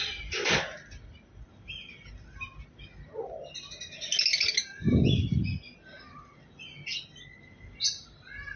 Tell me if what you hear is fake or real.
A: real